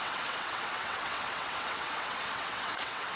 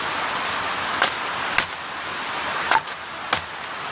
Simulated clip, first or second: first